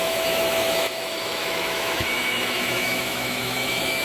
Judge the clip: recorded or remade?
remade